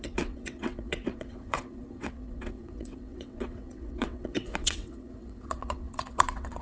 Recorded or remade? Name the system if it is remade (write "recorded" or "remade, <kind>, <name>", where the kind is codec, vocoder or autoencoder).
remade, vocoder, WaveNeXt